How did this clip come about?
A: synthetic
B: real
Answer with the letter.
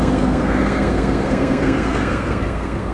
A